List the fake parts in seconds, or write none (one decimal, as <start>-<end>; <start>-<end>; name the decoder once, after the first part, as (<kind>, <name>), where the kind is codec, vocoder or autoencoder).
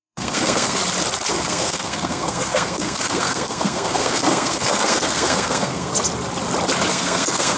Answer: 0.0-0.8 (codec, SNAC); 1.3-5.9; 6.9-7.6